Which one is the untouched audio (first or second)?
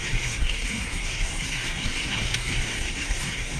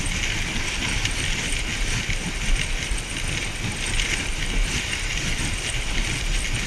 second